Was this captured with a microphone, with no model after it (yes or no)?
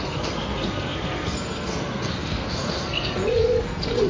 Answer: no